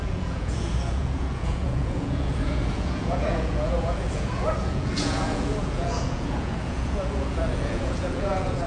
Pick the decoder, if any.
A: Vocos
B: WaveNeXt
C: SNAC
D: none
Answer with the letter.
A